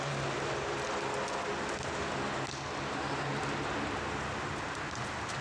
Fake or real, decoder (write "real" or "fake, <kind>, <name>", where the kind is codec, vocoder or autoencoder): real